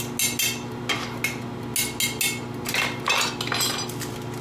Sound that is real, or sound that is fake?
real